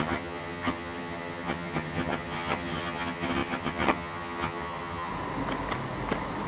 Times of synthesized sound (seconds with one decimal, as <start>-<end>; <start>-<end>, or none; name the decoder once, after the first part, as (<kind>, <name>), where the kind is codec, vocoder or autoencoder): 0.0-5.1 (vocoder, HiFi-GAN)